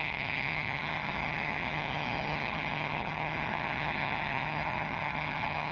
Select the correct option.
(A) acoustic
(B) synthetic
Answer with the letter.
B